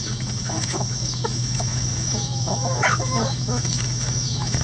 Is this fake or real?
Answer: fake